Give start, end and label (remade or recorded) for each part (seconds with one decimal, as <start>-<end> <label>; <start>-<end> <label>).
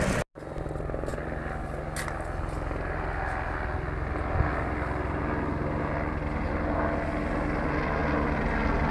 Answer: 0.0-8.9 recorded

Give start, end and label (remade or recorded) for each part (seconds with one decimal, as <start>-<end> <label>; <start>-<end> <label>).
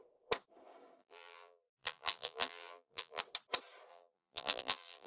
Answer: 0.0-1.0 recorded; 1.0-3.2 remade; 3.2-3.9 recorded; 3.9-5.1 remade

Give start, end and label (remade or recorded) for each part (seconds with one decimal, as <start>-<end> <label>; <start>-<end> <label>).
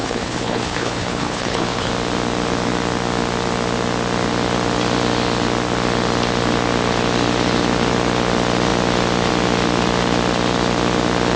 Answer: 0.0-1.9 remade; 1.9-11.4 recorded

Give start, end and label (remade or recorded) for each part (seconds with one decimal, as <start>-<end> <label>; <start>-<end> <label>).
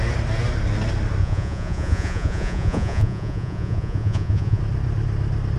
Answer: 0.0-1.2 recorded; 1.2-4.6 remade; 4.6-5.6 recorded